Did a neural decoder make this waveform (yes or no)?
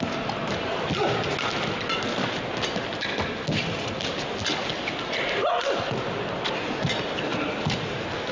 no